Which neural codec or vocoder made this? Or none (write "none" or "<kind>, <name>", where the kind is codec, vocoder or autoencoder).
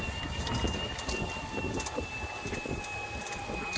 none